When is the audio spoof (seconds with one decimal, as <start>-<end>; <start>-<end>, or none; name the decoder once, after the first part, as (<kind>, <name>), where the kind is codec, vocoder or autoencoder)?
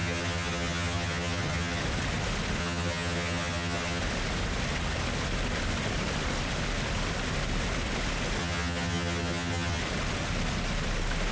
0.0-1.8 (vocoder, HiFi-GAN); 2.6-4.0; 8.4-9.8